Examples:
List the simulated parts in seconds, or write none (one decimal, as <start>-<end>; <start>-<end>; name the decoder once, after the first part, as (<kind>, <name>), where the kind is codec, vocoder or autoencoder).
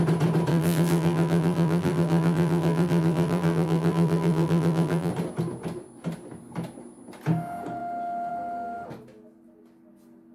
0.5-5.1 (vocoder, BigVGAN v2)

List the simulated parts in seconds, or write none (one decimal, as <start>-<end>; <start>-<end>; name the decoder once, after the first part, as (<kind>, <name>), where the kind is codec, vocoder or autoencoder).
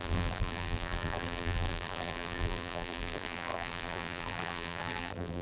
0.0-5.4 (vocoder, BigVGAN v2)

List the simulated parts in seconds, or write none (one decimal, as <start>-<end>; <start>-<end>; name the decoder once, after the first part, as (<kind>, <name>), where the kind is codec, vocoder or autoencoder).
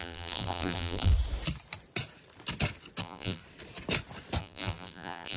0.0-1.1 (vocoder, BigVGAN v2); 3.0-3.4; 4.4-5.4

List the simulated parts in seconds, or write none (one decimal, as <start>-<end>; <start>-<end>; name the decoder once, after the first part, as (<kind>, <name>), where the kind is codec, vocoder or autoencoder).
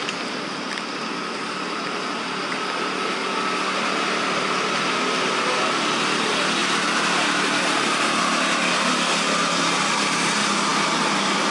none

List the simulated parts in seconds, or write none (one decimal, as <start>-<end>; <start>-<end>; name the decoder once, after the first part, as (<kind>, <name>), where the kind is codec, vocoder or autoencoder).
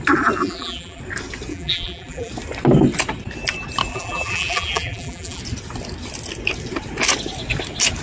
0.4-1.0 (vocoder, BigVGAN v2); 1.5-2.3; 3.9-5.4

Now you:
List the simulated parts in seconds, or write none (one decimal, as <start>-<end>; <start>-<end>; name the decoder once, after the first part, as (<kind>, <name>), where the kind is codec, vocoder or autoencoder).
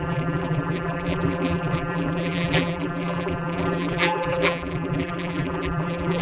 0.0-6.2 (vocoder, BigVGAN v2)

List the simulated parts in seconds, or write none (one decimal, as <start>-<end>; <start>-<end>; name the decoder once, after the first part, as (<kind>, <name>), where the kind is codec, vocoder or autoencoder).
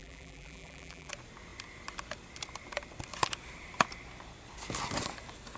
0.0-1.1 (vocoder, BigVGAN v2)